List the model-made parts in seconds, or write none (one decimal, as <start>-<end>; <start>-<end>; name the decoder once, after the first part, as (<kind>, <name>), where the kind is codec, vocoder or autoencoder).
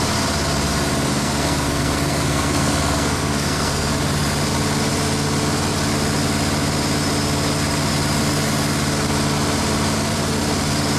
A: 1.1-4.0 (codec, SNAC)